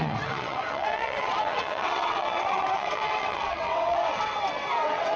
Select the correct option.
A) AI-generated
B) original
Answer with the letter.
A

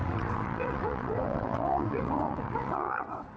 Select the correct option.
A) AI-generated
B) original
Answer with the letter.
A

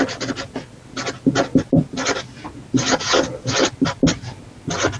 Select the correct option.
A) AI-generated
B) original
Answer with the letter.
B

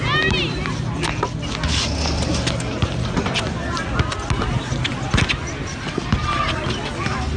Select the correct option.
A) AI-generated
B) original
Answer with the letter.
B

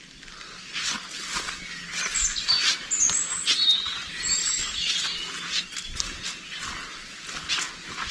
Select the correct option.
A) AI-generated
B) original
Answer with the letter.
B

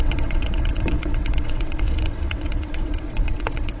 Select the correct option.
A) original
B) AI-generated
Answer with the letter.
B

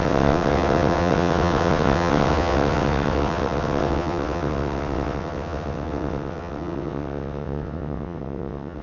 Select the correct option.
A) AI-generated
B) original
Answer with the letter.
A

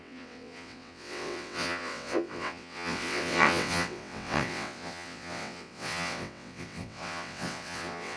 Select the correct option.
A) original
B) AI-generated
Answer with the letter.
B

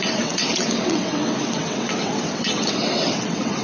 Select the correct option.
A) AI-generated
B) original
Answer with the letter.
A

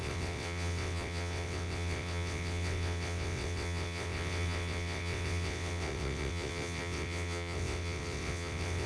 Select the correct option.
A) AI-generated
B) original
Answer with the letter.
A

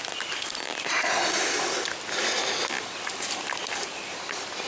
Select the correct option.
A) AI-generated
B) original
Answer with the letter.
B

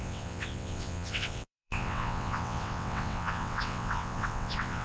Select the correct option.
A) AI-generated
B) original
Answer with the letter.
A